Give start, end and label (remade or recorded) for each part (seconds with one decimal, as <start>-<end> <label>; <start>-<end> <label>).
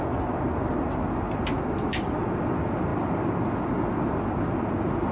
0.0-5.1 recorded